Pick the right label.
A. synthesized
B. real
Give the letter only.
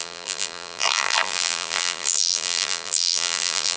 A